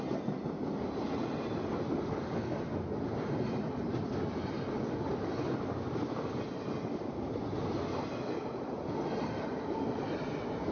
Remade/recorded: recorded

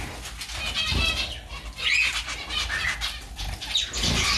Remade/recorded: recorded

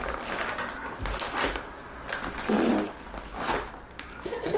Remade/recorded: recorded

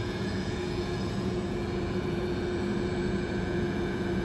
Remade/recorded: remade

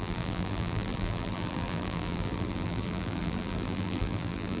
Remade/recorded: remade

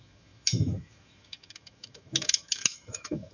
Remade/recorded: remade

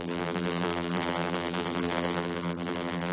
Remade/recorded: remade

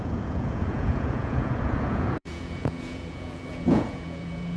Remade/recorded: remade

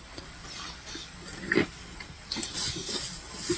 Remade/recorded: remade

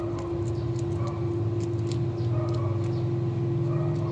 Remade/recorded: recorded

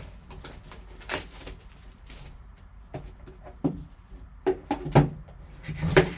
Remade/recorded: remade